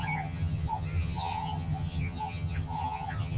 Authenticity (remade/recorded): remade